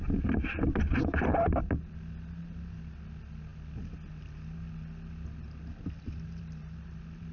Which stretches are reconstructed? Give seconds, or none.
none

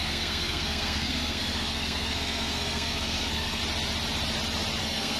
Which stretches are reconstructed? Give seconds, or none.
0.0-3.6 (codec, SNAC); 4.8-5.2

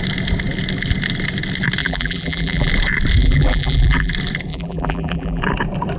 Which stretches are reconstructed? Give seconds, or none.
1.8-2.7 (vocoder, BigVGAN v2); 3.2-4.1; 4.5-5.4

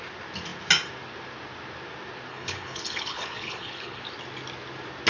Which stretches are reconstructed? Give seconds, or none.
2.3-4.0 (codec, HILCodec)

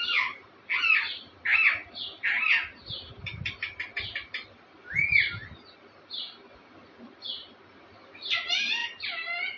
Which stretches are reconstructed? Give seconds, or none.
8.8-9.6 (vocoder, BigVGAN v2)

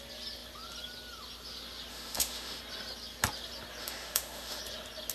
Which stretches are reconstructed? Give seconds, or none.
1.9-2.6 (autoencoder, DAC-VAE); 3.8-4.6

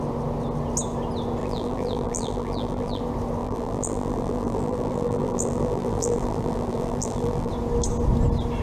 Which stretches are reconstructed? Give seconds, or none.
1.4-3.0 (vocoder, BigVGAN v2); 3.4-7.5